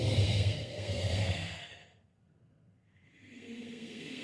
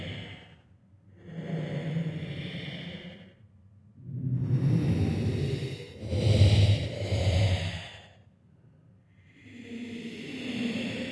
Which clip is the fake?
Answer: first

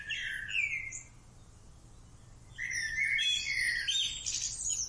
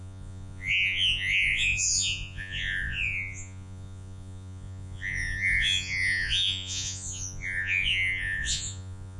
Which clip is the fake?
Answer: second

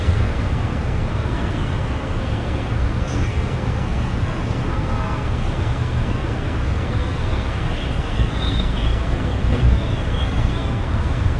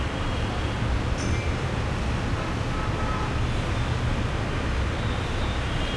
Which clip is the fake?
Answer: first